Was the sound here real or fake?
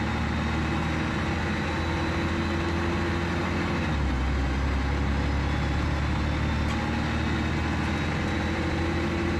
real